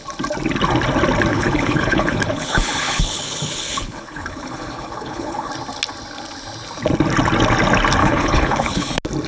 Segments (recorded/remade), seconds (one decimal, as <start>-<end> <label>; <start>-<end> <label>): 0.0-1.3 recorded; 1.3-5.5 remade; 5.5-8.0 recorded; 8.0-8.9 remade; 8.9-9.3 recorded